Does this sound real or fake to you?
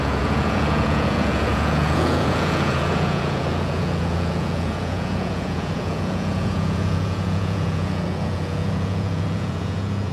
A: fake